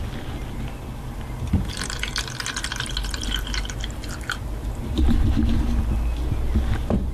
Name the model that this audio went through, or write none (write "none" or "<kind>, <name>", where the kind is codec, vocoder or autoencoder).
none